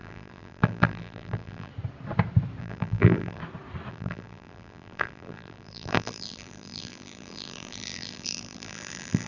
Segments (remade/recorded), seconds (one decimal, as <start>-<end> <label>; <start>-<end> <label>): 0.0-1.7 remade; 1.7-2.6 recorded; 2.6-3.4 remade; 3.4-3.9 recorded; 3.9-9.3 remade